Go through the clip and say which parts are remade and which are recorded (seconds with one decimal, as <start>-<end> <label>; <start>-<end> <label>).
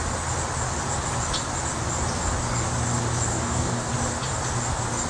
0.0-3.3 recorded; 3.3-3.9 remade; 3.9-5.1 recorded